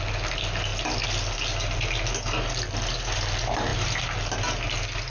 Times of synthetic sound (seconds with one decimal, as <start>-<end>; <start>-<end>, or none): none